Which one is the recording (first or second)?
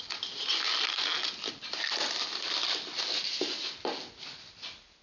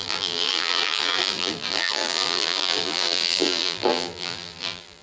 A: first